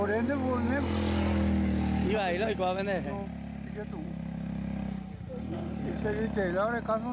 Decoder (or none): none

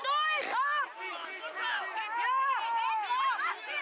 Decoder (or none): none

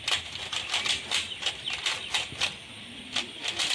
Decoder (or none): none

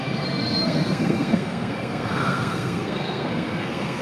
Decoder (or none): codec, SNAC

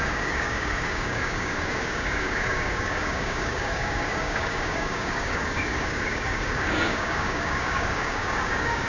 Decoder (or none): codec, DAC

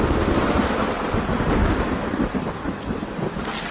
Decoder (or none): none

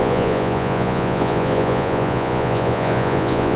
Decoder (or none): vocoder, Vocos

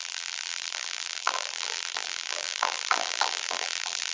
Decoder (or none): vocoder, BigVGAN v2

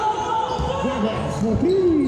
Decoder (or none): none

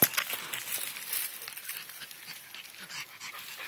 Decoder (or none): none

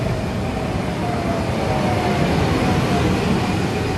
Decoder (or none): none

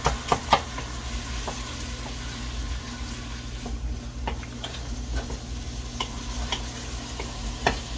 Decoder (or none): none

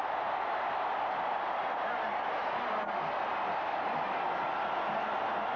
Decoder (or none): none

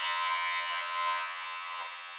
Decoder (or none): vocoder, HiFi-GAN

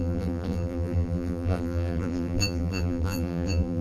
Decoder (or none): vocoder, BigVGAN v2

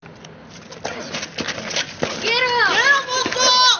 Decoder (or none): none